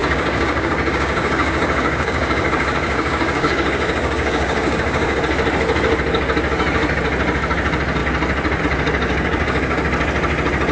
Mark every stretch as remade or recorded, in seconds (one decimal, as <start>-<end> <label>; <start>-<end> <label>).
0.0-5.2 remade; 5.2-9.1 recorded; 9.1-9.8 remade; 9.8-10.7 recorded